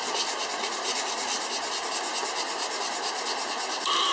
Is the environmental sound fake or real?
real